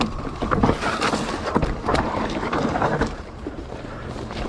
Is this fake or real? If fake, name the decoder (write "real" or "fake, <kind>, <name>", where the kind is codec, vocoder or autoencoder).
fake, vocoder, BigVGAN v2